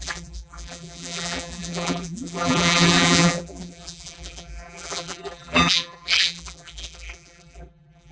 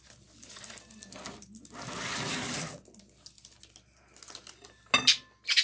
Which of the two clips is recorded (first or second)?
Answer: second